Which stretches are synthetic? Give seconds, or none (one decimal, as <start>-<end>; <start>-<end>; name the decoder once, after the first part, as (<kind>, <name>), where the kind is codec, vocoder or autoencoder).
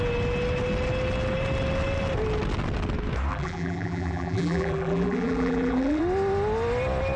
3.3-6.0 (vocoder, BigVGAN v2)